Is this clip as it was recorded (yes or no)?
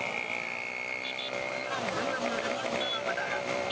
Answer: yes